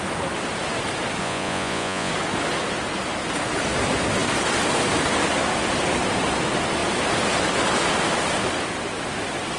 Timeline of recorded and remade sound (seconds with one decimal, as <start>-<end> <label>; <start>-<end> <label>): 0.0-1.2 recorded; 1.2-2.1 remade; 2.1-9.6 recorded